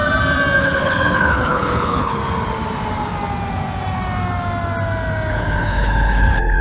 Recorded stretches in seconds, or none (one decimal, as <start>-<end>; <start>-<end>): 0.0-0.6; 2.2-5.3